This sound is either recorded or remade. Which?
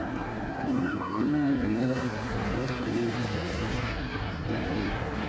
remade